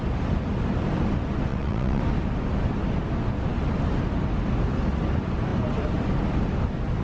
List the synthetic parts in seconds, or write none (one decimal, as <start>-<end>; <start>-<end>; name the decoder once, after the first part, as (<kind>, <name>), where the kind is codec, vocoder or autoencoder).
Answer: 1.5-2.0 (vocoder, WaveNeXt)